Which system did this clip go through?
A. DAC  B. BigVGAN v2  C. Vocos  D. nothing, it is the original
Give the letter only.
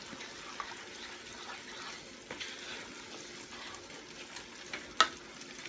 D